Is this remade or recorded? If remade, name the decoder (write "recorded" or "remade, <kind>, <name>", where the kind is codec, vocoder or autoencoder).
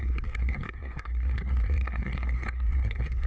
remade, codec, SNAC